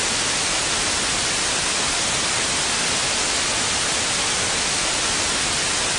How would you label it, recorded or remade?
recorded